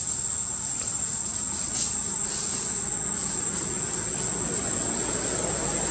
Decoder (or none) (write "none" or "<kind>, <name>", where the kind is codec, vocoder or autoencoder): none